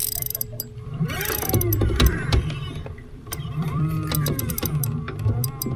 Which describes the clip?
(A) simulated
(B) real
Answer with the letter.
A